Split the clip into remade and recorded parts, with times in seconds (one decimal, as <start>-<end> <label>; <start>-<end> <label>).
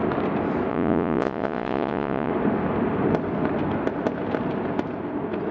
0.0-0.7 recorded; 0.7-2.3 remade; 2.3-5.5 recorded